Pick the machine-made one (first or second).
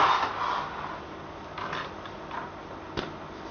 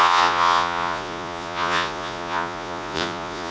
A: second